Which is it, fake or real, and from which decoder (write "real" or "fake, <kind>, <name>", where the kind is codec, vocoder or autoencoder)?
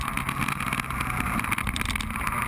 real